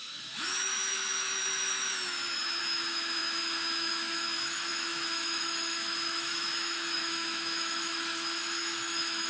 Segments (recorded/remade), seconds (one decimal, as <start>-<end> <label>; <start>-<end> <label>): 0.0-9.3 remade